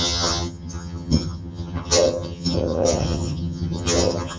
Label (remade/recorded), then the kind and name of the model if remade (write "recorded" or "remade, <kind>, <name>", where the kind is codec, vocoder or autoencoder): remade, vocoder, HiFi-GAN